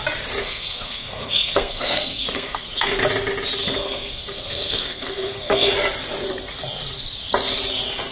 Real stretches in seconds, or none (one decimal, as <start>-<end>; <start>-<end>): 0.0-0.4; 3.0-3.8; 5.7-8.1